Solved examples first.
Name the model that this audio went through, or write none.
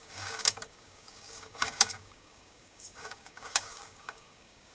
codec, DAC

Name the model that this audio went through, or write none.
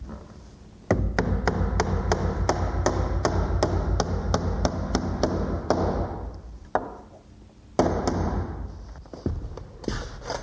none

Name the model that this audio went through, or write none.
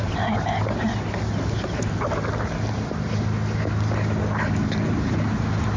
none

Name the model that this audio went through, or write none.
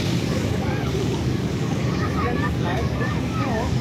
codec, DAC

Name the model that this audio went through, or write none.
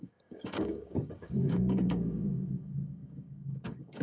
codec, DAC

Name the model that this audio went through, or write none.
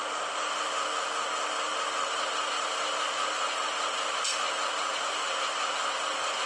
none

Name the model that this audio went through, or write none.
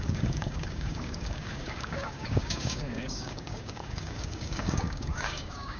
codec, DAC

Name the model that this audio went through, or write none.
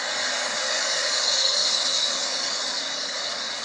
codec, DAC